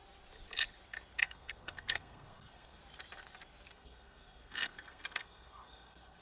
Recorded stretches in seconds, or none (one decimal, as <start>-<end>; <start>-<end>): 0.0-1.2; 2.8-3.7